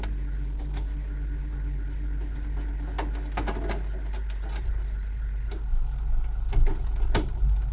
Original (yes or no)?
yes